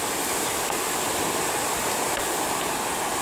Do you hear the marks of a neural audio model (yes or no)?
no